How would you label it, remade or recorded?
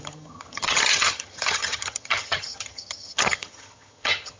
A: remade